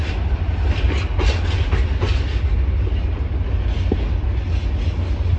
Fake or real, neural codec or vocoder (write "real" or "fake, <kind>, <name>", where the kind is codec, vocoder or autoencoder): real